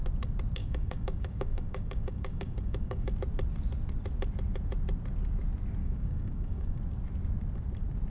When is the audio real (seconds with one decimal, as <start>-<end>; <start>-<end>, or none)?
0.0-0.6; 3.1-5.8; 6.8-8.1